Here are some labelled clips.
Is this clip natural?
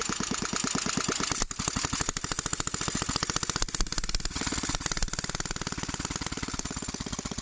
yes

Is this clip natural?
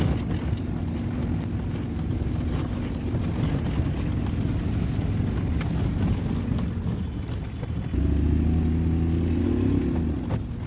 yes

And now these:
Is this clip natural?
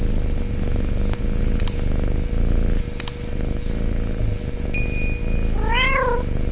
yes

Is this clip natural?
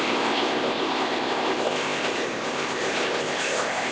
no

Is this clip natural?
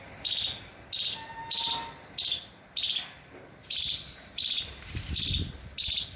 yes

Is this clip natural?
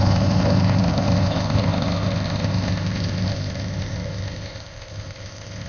no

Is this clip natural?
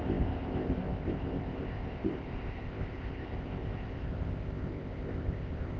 no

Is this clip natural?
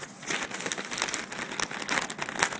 yes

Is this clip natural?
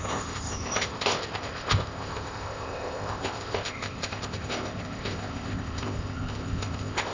no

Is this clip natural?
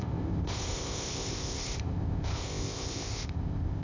no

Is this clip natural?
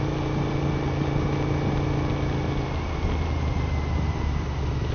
yes